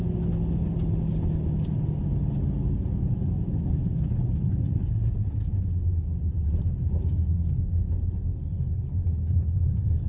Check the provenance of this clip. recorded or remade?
recorded